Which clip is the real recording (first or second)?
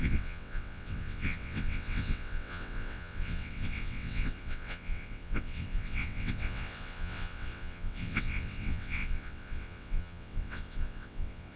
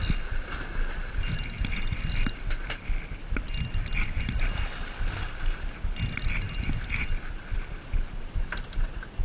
second